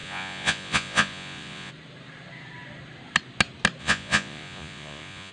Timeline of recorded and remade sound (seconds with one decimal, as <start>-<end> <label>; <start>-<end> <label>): 0.0-1.7 remade; 1.7-3.8 recorded; 3.8-5.3 remade